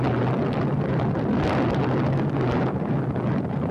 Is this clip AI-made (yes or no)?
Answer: no